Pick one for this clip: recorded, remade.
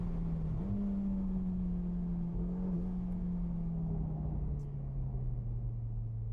recorded